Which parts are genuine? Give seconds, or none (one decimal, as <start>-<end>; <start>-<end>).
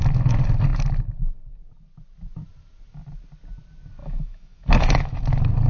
0.0-4.0; 5.2-5.7